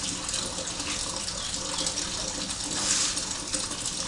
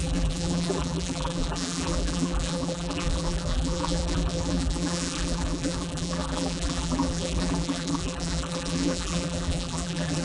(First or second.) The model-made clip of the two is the second